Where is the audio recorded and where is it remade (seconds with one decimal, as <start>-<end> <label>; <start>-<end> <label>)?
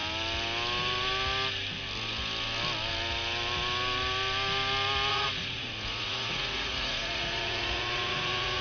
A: 0.0-5.1 recorded; 5.1-8.6 remade